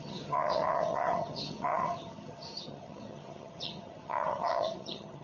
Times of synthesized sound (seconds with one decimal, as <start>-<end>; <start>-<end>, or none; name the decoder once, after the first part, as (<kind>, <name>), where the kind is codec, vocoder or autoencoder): 0.0-5.2 (vocoder, HiFi-GAN)